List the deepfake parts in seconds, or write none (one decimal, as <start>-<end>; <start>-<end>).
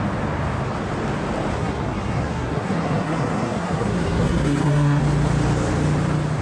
1.5-5.0